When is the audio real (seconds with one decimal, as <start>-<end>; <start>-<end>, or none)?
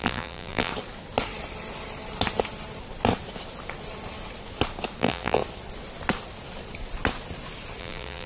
0.7-5.0; 5.4-7.8